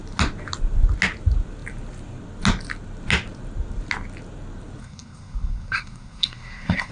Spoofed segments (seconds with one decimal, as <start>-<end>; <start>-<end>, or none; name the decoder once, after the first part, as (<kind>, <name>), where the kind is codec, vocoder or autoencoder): 4.8-6.9 (codec, SNAC)